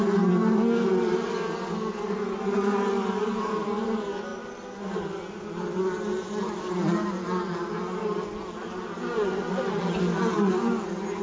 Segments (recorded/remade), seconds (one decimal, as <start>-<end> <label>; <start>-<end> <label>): 0.0-11.2 recorded